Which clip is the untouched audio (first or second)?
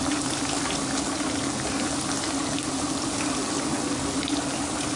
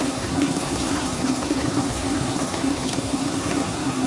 first